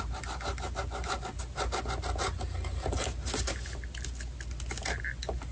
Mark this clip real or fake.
real